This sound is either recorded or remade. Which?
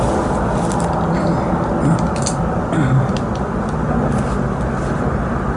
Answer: recorded